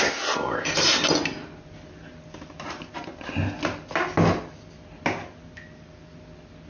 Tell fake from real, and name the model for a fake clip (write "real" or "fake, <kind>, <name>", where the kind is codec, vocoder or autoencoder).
real